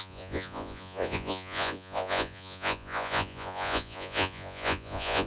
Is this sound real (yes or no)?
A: no